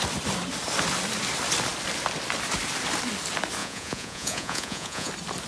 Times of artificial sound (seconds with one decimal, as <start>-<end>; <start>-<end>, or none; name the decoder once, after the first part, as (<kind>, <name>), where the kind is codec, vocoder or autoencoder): 3.6-5.1 (vocoder, Vocos)